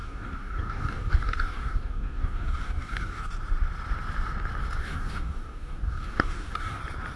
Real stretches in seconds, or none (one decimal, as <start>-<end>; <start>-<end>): 3.3-4.8; 6.8-7.2